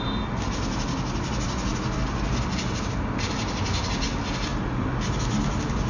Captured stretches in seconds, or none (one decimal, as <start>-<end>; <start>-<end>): 0.0-5.9